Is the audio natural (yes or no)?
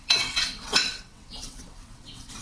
no